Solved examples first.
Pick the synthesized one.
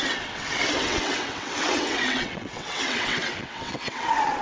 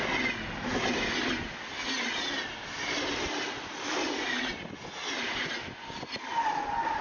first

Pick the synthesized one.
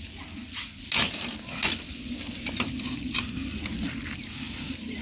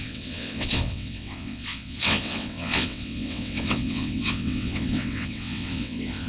second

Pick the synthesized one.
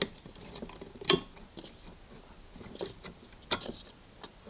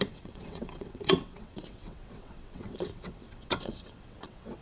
second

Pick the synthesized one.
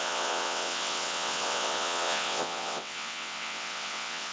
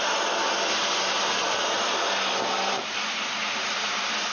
first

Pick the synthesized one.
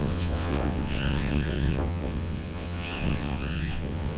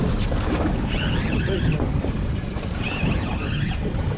first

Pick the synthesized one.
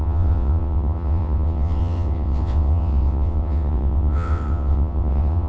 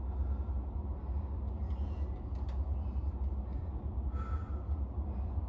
first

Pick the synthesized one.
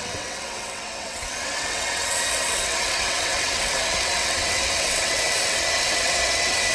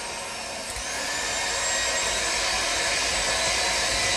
first